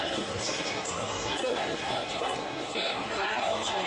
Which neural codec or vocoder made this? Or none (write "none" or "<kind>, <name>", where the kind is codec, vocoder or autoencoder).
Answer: codec, SNAC